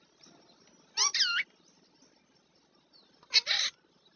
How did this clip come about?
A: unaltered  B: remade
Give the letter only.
A